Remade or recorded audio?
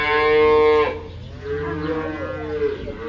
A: recorded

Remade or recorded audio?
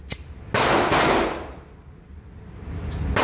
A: recorded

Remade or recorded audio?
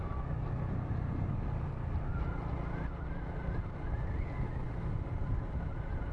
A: recorded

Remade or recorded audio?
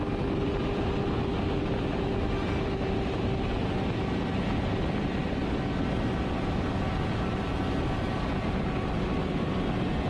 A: recorded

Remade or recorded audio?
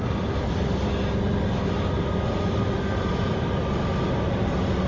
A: recorded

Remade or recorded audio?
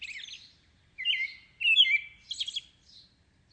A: recorded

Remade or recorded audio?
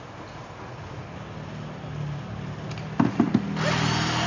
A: recorded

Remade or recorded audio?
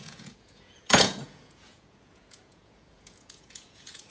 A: remade